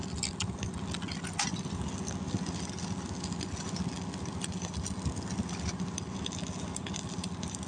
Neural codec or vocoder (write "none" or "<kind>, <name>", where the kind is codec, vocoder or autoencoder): none